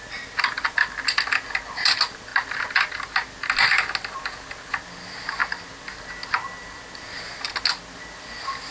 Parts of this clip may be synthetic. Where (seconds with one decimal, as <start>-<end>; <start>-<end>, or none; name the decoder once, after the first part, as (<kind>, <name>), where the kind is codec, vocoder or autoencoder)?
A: none